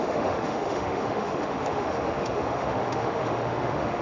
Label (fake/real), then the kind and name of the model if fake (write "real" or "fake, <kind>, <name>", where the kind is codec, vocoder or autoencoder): fake, autoencoder, DAC-VAE